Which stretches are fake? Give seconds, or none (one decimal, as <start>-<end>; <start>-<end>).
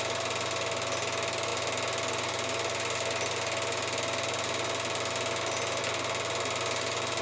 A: none